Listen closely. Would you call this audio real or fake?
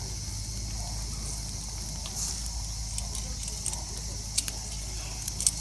real